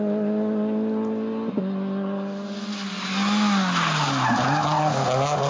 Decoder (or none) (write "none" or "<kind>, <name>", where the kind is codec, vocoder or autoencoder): none